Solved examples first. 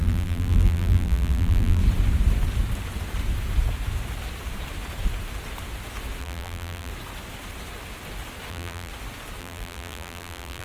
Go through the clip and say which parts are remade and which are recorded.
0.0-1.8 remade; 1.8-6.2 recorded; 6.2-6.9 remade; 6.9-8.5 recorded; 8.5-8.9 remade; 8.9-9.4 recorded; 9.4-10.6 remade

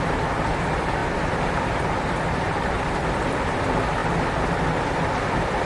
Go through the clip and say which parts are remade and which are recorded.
0.0-5.7 remade

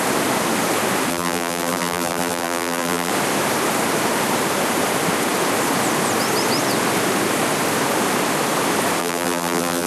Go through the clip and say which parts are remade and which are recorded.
0.0-1.1 recorded; 1.1-3.1 remade; 3.1-9.0 recorded; 9.0-9.9 remade